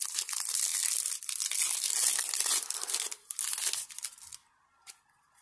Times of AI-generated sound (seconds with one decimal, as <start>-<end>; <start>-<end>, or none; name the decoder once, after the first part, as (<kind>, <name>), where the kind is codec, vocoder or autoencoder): none